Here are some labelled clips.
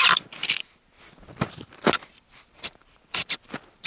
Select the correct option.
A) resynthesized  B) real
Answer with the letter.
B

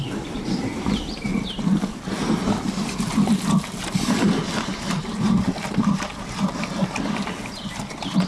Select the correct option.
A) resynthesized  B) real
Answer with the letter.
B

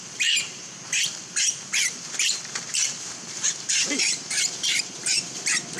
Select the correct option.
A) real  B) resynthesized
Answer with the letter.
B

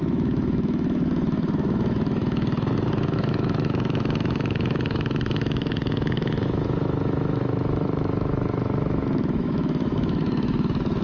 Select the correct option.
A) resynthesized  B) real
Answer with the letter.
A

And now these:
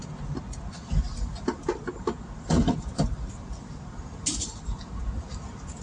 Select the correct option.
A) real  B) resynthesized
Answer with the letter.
A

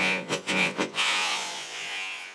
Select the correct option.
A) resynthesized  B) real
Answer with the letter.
A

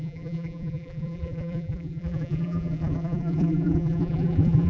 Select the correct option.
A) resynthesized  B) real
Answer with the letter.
A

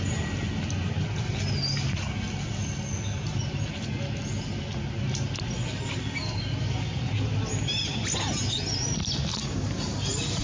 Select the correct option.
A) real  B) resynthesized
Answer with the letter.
A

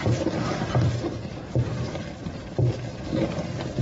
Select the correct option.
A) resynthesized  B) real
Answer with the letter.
A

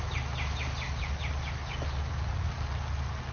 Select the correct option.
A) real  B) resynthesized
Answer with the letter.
A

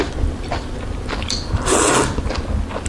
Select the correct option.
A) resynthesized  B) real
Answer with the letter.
B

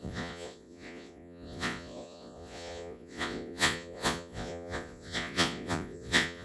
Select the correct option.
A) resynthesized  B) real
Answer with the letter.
A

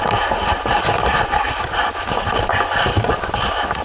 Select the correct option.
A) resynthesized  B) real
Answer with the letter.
B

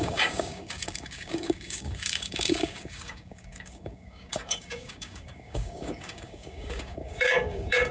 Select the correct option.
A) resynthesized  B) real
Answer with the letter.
A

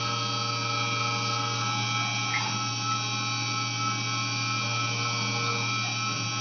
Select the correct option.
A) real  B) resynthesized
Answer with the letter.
A